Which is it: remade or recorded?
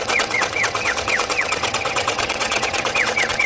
remade